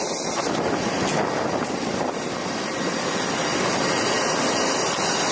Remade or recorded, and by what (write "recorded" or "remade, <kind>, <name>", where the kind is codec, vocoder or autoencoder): recorded